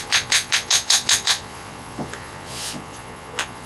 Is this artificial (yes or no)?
yes